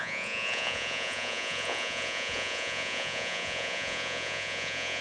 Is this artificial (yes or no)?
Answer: yes